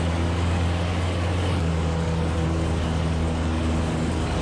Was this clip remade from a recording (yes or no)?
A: yes